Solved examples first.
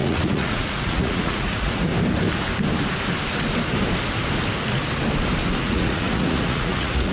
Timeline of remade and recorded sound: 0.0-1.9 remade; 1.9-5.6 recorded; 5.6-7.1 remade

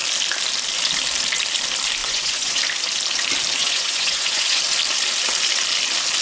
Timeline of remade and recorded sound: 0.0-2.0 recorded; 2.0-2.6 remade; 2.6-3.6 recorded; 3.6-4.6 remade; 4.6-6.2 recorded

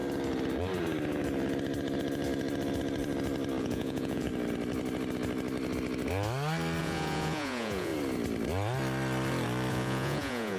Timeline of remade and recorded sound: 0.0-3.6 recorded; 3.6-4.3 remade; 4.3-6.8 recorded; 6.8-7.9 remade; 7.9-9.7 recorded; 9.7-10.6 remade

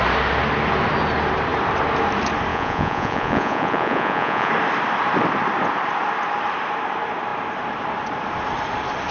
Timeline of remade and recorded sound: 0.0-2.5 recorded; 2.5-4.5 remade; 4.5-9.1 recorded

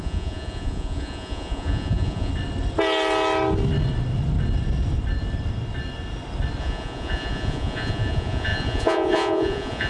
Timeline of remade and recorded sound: 0.0-2.3 remade; 2.3-6.6 recorded; 6.6-9.9 remade

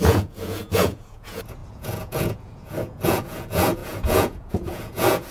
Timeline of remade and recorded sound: 0.0-5.3 remade